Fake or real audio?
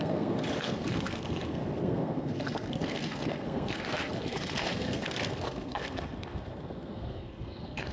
fake